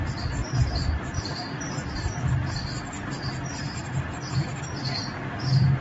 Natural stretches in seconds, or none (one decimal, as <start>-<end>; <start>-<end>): 0.0-0.4; 2.8-3.5; 4.5-5.8